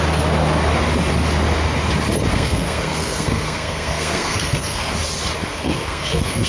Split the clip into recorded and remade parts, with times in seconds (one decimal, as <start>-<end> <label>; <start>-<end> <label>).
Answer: 0.0-2.3 recorded; 2.3-4.9 remade; 4.9-5.5 recorded; 5.5-6.5 remade